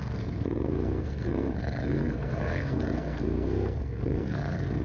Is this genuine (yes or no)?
no